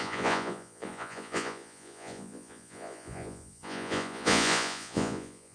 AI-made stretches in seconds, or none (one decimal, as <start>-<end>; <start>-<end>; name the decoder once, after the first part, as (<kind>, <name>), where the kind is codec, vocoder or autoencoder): 0.0-5.5 (vocoder, Vocos)